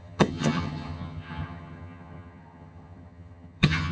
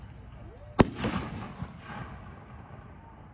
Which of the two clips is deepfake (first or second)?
first